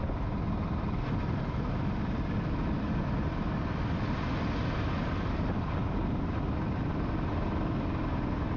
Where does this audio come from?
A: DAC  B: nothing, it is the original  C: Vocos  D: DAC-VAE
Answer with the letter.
B